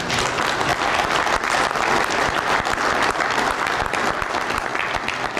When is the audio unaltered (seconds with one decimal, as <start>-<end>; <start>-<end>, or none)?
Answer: 0.0-5.4